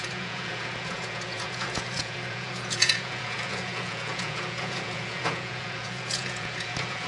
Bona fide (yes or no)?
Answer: no